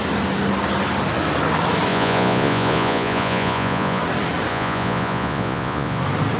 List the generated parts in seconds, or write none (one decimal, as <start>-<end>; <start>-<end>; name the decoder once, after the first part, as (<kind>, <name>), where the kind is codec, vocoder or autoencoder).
1.9-4.0 (vocoder, Vocos); 4.5-6.0